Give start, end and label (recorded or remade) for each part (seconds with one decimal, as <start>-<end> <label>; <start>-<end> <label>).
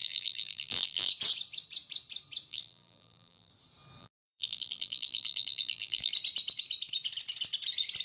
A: 0.0-1.1 remade; 1.1-2.5 recorded; 2.5-3.5 remade; 3.5-4.0 recorded; 4.0-6.1 remade; 6.1-8.0 recorded